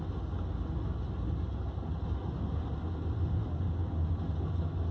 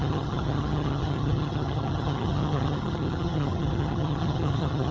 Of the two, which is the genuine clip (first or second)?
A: first